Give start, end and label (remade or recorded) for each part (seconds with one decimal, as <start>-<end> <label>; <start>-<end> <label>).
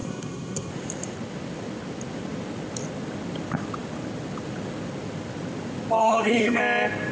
0.0-0.7 remade; 0.7-6.0 recorded; 6.0-6.6 remade; 6.6-7.1 recorded